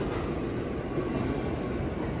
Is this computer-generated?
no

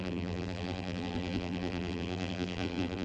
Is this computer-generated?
yes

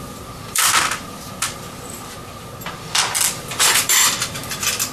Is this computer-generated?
yes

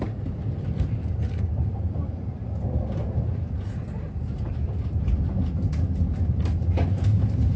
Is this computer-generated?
no